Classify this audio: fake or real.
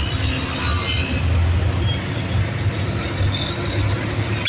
real